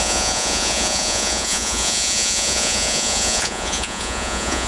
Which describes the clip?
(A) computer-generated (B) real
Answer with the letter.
A